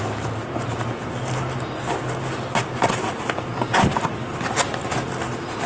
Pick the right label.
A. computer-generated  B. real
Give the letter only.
B